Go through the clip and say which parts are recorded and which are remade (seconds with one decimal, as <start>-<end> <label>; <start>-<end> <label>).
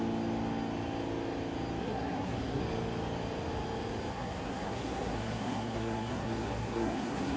0.0-1.8 recorded; 1.8-2.6 remade; 2.6-4.1 recorded; 4.1-7.4 remade